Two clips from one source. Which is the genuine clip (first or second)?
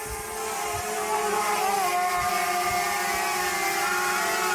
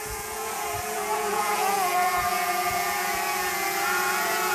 first